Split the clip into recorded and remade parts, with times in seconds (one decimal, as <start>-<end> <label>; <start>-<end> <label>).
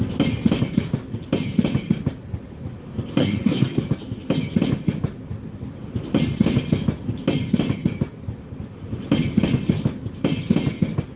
0.0-3.2 recorded; 3.2-3.8 remade; 3.8-11.2 recorded